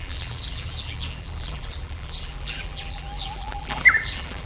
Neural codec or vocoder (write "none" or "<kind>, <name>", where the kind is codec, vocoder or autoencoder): vocoder, BigVGAN v2